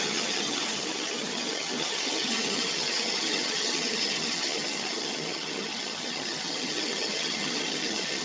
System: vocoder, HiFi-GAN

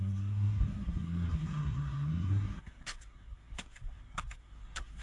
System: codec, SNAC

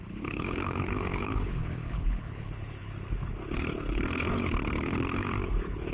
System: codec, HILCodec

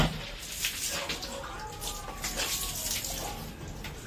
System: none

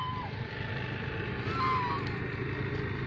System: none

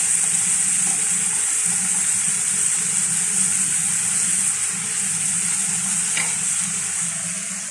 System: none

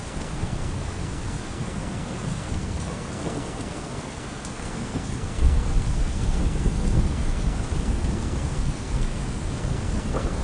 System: codec, SNAC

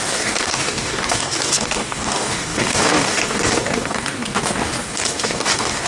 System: codec, DAC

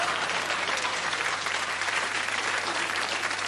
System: vocoder, BigVGAN v2